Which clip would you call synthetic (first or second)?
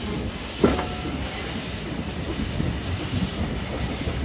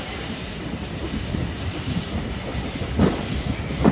second